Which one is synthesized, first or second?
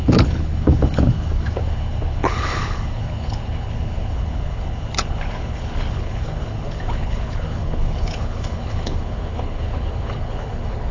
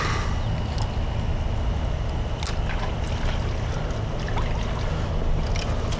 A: first